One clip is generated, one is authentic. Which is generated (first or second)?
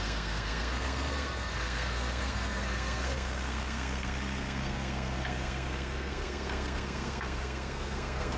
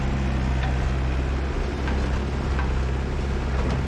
first